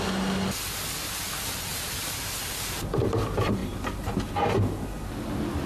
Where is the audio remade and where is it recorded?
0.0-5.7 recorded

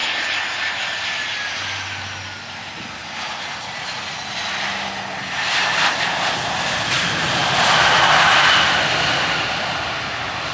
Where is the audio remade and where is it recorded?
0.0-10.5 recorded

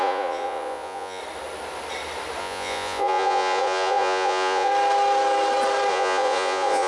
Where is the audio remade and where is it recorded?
0.0-1.2 remade; 1.2-2.4 recorded; 2.4-4.7 remade; 4.7-5.9 recorded; 5.9-6.9 remade

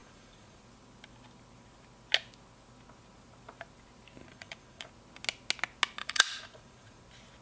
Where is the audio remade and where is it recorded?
0.0-0.6 remade; 0.6-4.2 recorded; 4.2-4.9 remade; 4.9-6.0 recorded; 6.0-7.0 remade; 7.0-7.4 recorded